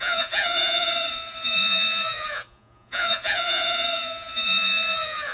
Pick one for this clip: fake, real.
fake